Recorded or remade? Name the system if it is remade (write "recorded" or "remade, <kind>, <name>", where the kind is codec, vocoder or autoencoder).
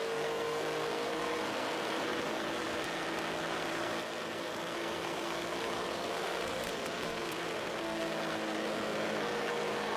remade, codec, SNAC